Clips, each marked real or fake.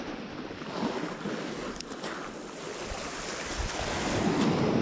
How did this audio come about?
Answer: real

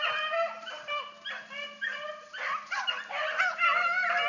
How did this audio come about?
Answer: real